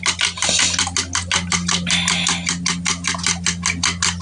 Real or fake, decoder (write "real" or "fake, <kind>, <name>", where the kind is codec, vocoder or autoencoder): real